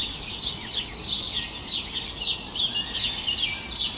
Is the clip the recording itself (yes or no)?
yes